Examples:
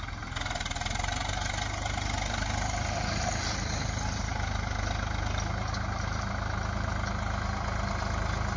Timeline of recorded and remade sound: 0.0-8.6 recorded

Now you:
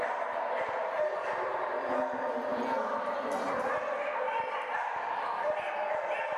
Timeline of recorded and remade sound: 0.0-6.4 recorded